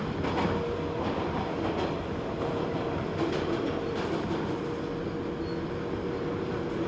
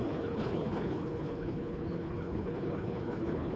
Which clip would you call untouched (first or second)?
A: first